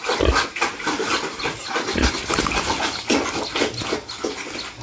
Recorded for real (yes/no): yes